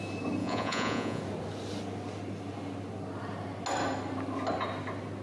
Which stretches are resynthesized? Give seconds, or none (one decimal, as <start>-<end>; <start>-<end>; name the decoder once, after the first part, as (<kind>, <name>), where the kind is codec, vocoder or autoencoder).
0.4-1.2 (vocoder, Vocos)